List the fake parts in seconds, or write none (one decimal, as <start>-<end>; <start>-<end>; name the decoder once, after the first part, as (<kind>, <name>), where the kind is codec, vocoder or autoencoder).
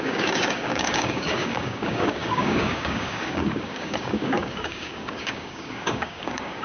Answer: 0.0-6.6 (codec, DAC)